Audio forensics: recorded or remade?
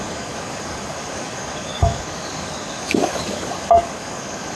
remade